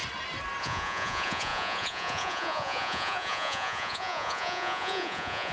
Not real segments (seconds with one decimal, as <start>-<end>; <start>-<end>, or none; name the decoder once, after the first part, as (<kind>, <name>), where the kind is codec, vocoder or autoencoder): 0.6-5.5 (vocoder, Vocos)